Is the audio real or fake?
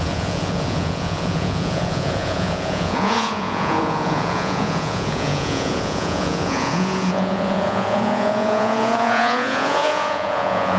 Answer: fake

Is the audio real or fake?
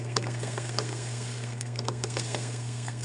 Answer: fake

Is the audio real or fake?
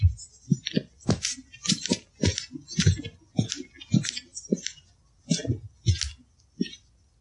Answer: real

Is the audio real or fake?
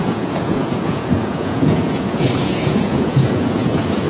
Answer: fake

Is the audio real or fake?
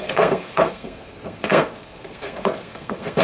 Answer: fake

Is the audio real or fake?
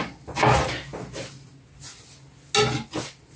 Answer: real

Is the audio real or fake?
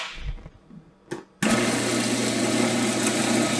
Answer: real